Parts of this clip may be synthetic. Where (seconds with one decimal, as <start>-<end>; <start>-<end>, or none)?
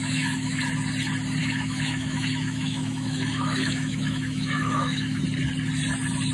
0.0-0.6; 1.4-5.2